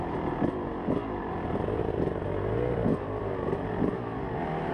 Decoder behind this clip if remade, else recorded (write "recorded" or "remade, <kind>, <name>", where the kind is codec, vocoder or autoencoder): recorded